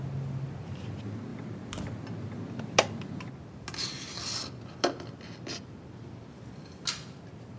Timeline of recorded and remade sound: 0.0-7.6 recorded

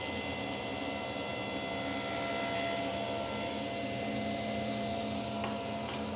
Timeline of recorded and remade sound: 0.0-6.2 recorded

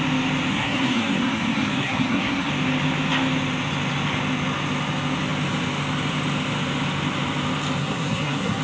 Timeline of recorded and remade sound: 0.0-0.5 recorded; 0.5-2.5 remade; 2.5-7.8 recorded; 7.8-8.6 remade

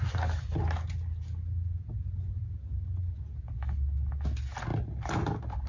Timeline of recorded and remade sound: 0.0-5.7 recorded

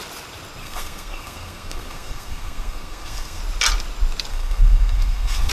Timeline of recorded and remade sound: 0.0-0.6 recorded; 0.6-3.4 remade; 3.4-4.3 recorded; 4.3-5.5 remade